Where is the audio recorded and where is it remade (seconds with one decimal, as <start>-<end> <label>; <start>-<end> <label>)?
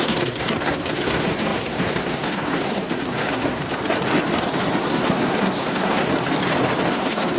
0.0-3.6 remade; 3.6-4.8 recorded; 4.8-6.1 remade; 6.1-6.9 recorded; 6.9-7.4 remade